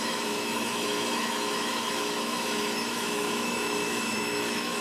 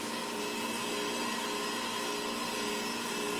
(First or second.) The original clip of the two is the second